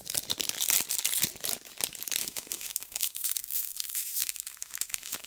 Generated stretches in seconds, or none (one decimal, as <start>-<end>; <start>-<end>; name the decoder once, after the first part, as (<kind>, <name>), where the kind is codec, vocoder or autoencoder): 2.2-5.3 (autoencoder, DAC-VAE)